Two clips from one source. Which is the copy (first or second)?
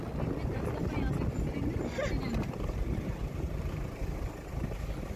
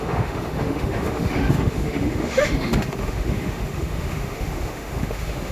second